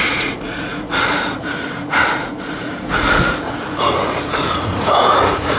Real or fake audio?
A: fake